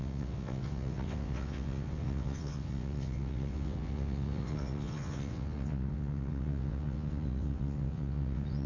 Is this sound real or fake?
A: fake